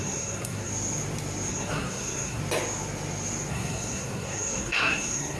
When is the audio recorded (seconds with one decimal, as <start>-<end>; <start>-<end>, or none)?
0.7-1.5; 2.4-3.5